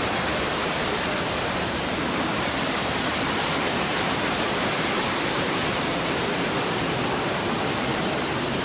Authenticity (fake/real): fake